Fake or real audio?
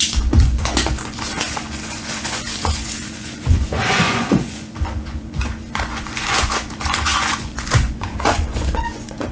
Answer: fake